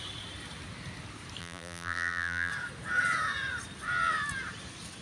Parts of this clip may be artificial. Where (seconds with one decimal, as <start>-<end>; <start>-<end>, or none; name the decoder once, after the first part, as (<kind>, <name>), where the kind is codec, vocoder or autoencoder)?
1.4-2.5 (vocoder, BigVGAN v2)